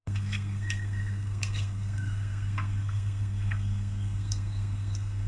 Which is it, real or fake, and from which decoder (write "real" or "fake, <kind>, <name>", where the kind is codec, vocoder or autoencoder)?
fake, codec, SNAC